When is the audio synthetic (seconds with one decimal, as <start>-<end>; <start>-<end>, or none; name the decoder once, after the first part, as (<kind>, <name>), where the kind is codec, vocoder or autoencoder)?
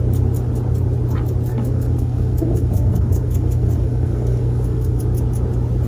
1.5-5.0 (codec, SNAC)